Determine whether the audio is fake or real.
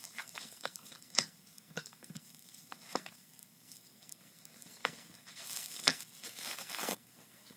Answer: fake